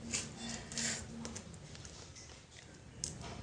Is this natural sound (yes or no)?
yes